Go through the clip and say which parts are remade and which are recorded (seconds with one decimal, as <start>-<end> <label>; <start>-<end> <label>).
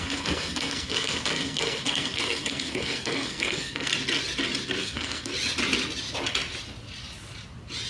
0.0-3.9 remade; 3.9-4.8 recorded; 4.8-5.3 remade; 5.3-7.9 recorded